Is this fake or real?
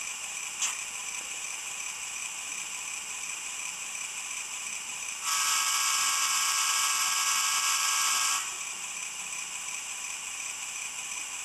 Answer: fake